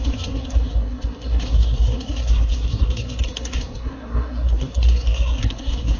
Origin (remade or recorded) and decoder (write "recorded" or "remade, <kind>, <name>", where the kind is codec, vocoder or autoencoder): remade, codec, SNAC